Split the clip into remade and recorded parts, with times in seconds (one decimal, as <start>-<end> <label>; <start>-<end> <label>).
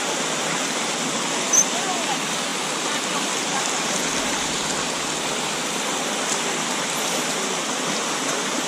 0.0-2.5 recorded; 2.5-4.9 remade; 4.9-8.7 recorded